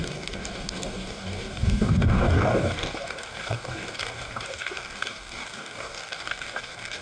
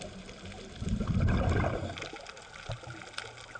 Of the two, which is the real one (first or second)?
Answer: second